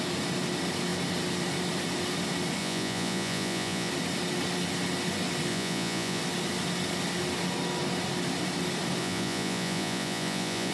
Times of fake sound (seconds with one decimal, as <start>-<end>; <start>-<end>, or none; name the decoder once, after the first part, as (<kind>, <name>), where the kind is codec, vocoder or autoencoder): 2.6-3.9 (vocoder, Vocos); 5.5-6.2; 9.0-10.7